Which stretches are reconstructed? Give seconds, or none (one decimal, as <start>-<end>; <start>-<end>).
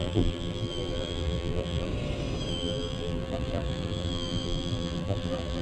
0.0-1.9; 2.5-5.6